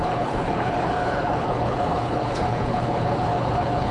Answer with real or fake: fake